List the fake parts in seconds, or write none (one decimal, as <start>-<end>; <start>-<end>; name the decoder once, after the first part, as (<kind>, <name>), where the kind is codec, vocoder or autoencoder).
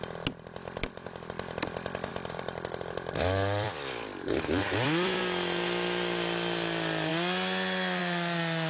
2.1-5.2 (vocoder, BigVGAN v2)